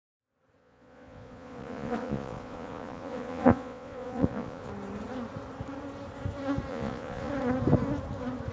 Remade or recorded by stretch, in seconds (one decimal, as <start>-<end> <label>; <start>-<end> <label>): 0.0-0.6 recorded; 0.6-4.7 remade; 4.7-6.7 recorded; 6.7-7.3 remade; 7.3-8.5 recorded

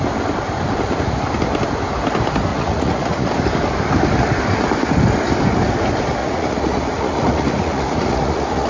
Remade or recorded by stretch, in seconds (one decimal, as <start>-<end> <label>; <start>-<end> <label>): 0.0-2.5 recorded; 2.5-3.3 remade; 3.3-6.2 recorded; 6.2-8.7 remade

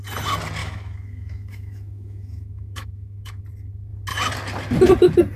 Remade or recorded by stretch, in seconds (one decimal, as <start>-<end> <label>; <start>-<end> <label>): 0.0-0.6 recorded; 0.6-3.4 remade; 3.4-5.4 recorded

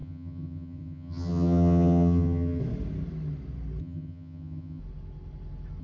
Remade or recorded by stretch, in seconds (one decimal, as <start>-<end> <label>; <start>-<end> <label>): 0.0-2.6 remade; 2.6-3.8 recorded; 3.8-4.8 remade; 4.8-5.8 recorded

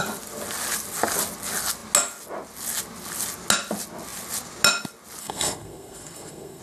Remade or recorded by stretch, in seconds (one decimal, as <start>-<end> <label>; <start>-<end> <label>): 0.0-5.2 recorded; 5.2-6.6 remade

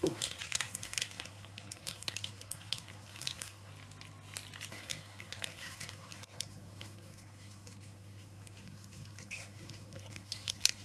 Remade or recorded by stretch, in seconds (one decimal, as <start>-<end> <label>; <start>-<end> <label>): 0.0-3.7 remade; 3.7-4.7 recorded; 4.7-10.8 remade